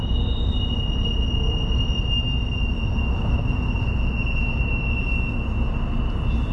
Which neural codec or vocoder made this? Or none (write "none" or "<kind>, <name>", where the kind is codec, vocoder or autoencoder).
none